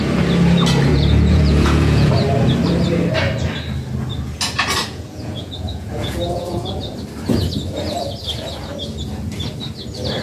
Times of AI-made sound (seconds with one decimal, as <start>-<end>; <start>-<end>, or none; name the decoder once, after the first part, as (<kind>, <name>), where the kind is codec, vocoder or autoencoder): 0.9-2.1 (vocoder, Vocos); 4.8-6.8